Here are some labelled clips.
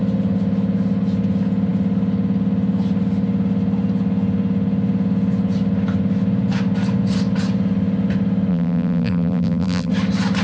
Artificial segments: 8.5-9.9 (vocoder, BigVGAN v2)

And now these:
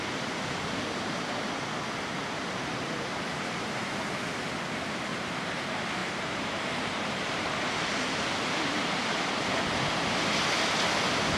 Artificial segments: 3.1-4.0 (vocoder, BigVGAN v2); 5.1-5.6; 6.0-7.5

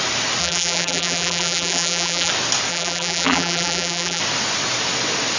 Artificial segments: 0.4-2.3 (vocoder, BigVGAN v2); 2.7-4.2